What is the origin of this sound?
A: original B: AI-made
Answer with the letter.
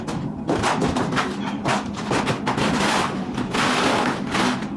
A